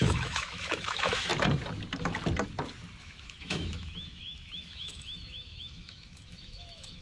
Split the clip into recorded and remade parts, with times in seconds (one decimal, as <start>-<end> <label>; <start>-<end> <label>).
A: 0.0-1.3 remade; 1.3-3.0 recorded; 3.0-7.0 remade